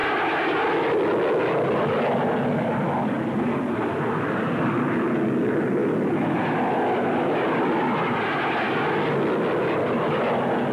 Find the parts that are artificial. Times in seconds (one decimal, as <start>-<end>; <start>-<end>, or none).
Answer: none